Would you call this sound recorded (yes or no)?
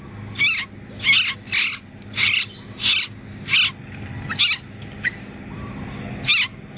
yes